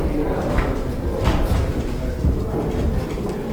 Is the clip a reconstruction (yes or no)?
no